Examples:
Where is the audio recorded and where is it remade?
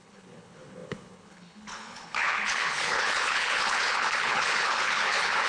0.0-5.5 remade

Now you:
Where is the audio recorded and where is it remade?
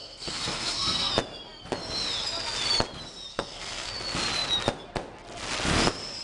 0.0-1.1 remade; 1.1-3.3 recorded; 3.3-3.9 remade; 3.9-6.2 recorded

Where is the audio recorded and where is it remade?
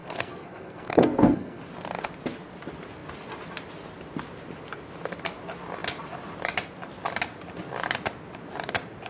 0.0-1.6 remade; 1.6-9.1 recorded